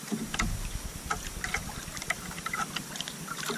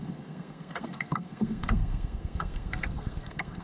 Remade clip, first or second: second